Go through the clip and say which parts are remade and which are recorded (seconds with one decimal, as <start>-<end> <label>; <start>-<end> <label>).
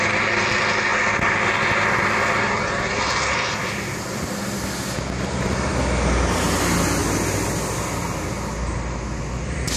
0.0-9.8 recorded